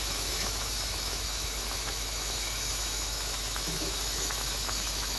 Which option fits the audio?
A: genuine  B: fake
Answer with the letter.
B